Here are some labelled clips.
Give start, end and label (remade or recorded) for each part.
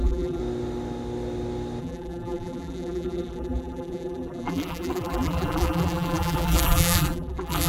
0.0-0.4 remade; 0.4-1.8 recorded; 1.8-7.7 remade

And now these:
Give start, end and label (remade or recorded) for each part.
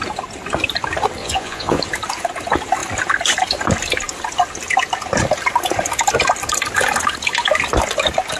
0.0-1.2 recorded; 1.2-1.8 remade; 1.8-8.4 recorded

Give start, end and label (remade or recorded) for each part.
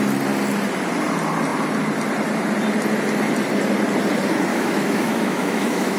0.0-4.5 recorded; 4.5-6.0 remade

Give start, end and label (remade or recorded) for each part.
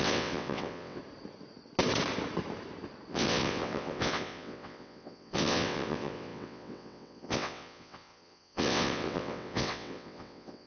0.0-1.0 remade; 1.0-3.1 recorded; 3.1-10.7 remade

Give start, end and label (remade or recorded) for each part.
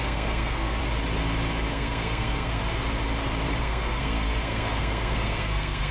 0.0-0.8 remade; 0.8-1.7 recorded; 1.7-2.6 remade; 2.6-3.6 recorded; 3.6-5.9 remade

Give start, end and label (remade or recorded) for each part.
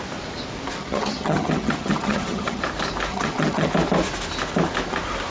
0.0-0.8 recorded; 0.8-2.6 remade; 2.6-3.1 recorded; 3.1-3.7 remade; 3.7-5.3 recorded